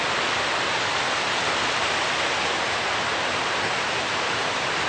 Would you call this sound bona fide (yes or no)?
yes